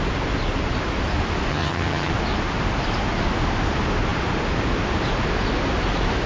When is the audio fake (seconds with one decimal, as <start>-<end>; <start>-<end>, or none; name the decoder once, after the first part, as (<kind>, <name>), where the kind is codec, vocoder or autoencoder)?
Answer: 1.5-2.1 (vocoder, HiFi-GAN)